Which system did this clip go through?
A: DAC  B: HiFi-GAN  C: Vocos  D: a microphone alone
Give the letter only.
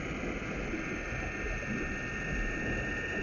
D